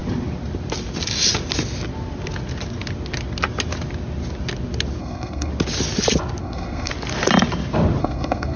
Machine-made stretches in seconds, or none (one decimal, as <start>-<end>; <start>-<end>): 5.0-5.5; 6.4-6.9; 8.0-8.6